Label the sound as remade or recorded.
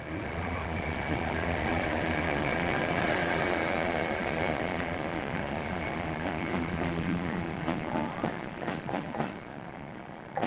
remade